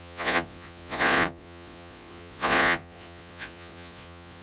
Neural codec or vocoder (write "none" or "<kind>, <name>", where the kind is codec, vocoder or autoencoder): vocoder, Vocos